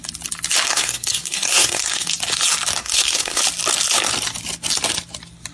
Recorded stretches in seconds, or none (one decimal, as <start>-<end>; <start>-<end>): 0.0-0.7; 2.1-2.8; 3.4-5.5